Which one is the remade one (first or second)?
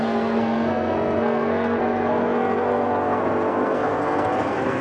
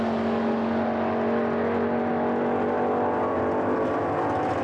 first